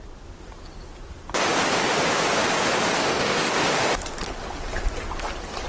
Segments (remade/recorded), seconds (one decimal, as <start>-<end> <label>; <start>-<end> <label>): 0.0-3.0 recorded; 3.0-3.5 remade; 3.5-5.7 recorded